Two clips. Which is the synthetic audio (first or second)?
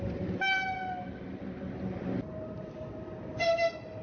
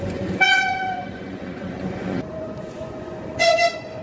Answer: second